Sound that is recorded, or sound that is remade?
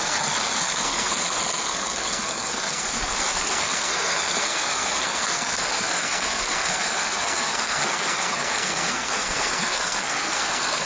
remade